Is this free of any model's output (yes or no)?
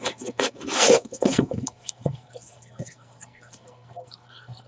no